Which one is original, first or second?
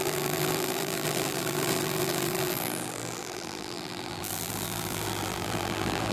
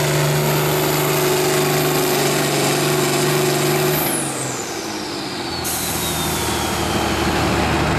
second